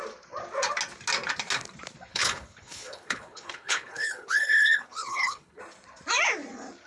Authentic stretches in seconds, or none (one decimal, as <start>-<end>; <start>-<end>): 0.0-2.1; 5.6-6.9